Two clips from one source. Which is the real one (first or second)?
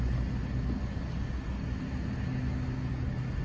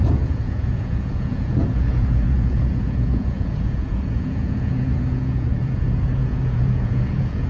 first